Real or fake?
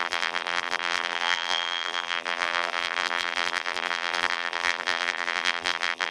fake